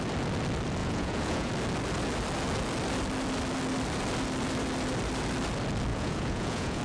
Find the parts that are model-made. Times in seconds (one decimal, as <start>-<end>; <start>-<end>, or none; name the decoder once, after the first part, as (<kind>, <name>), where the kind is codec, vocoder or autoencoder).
0.8-1.5 (vocoder, Vocos); 5.9-6.8